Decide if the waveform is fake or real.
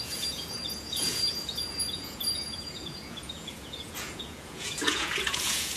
fake